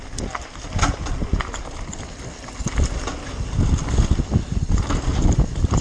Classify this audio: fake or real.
real